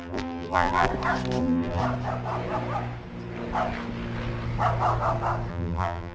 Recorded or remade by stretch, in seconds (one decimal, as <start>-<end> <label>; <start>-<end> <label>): 0.0-0.9 remade; 0.9-1.4 recorded; 1.4-1.8 remade; 1.8-5.5 recorded; 5.5-6.1 remade